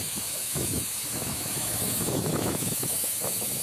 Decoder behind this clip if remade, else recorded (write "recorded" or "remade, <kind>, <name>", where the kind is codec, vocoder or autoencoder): remade, autoencoder, DAC-VAE